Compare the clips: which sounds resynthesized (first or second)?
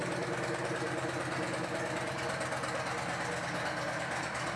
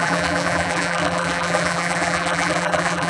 second